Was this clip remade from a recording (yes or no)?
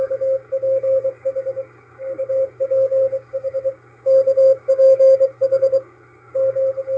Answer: yes